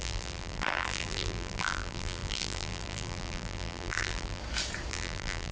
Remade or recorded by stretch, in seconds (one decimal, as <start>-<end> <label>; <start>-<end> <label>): 0.0-4.4 remade; 4.4-4.9 recorded; 4.9-5.5 remade